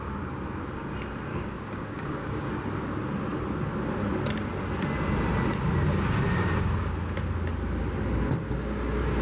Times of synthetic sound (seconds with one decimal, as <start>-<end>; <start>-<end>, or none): 1.3-2.5

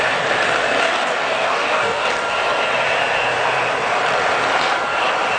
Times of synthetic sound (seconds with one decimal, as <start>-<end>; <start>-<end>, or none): 0.8-2.1

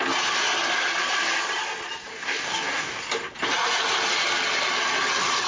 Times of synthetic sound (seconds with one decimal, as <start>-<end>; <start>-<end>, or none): 2.1-3.0

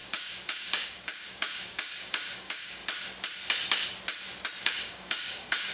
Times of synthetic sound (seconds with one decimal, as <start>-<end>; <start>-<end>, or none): 0.0-2.8; 4.6-5.7

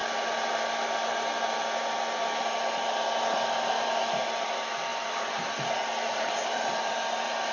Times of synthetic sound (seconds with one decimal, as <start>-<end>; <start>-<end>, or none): none

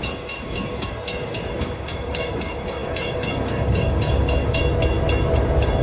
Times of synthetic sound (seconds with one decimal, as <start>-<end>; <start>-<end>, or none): 0.0-4.6